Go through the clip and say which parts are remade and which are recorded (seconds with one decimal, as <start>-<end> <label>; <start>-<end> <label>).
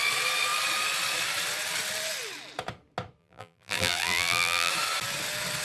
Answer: 0.0-3.2 recorded; 3.2-4.7 remade; 4.7-5.6 recorded